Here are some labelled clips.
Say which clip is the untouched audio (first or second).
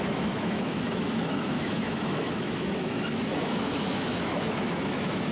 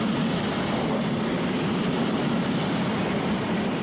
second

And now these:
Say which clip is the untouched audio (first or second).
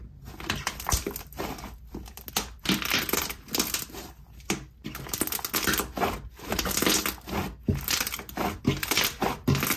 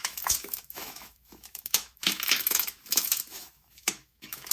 first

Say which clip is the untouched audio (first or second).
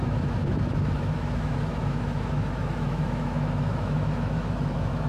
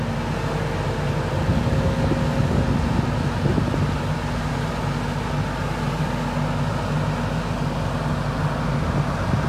second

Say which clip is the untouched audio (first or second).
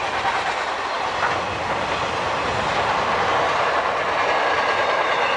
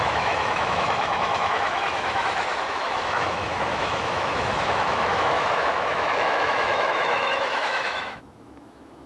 first